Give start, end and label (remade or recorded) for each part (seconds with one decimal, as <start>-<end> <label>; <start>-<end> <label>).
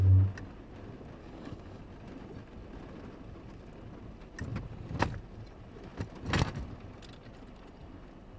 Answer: 0.0-1.2 recorded; 1.2-1.8 remade; 1.8-8.4 recorded